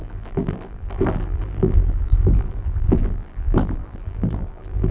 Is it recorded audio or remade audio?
remade